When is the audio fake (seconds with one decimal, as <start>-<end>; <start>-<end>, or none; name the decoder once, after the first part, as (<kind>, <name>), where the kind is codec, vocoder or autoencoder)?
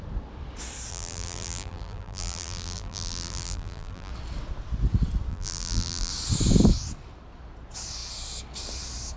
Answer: 0.9-4.1 (vocoder, BigVGAN v2); 5.3-6.1